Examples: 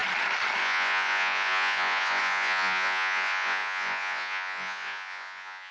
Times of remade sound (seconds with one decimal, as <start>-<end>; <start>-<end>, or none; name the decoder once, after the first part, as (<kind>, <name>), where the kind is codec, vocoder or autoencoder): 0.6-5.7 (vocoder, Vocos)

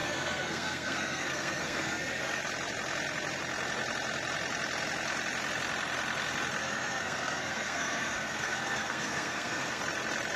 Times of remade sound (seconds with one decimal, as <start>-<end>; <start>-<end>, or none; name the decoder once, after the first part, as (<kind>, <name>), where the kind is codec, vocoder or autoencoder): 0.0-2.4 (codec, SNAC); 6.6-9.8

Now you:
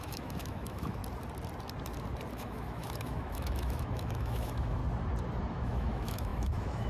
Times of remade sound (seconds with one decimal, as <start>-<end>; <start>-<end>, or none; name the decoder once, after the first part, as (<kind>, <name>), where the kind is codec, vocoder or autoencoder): 0.0-1.0 (autoencoder, DAC-VAE); 2.3-4.8; 5.5-6.9

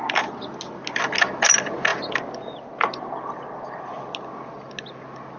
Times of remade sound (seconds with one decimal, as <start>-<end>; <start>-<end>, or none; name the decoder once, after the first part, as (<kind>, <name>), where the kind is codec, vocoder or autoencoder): none

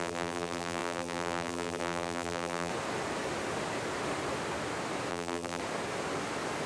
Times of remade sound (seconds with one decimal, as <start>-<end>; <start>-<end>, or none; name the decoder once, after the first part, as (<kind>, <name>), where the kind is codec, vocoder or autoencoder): 0.0-2.7 (vocoder, BigVGAN v2); 5.1-5.6

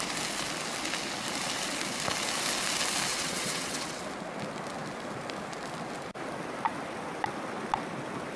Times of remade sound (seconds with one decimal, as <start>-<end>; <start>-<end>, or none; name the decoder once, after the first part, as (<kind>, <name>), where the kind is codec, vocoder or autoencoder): 3.1-4.0 (vocoder, WaveNeXt)